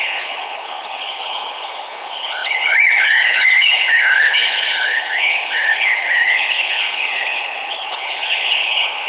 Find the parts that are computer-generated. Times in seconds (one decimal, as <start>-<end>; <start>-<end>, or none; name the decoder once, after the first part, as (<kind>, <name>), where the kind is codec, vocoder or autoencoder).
0.0-9.1 (codec, HILCodec)